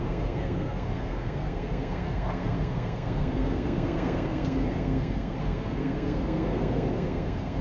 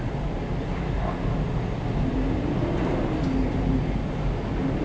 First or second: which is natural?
second